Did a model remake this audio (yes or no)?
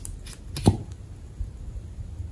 no